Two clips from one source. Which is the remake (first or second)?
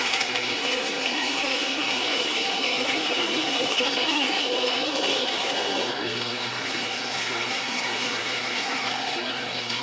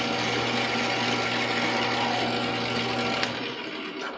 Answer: first